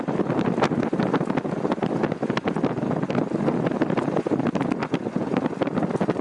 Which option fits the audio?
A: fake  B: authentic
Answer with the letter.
B